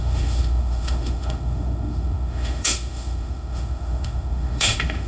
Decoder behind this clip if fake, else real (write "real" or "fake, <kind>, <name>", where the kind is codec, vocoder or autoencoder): fake, autoencoder, DAC-VAE